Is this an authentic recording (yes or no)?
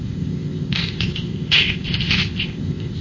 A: no